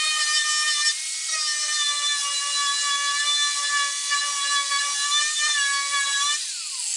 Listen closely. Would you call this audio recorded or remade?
recorded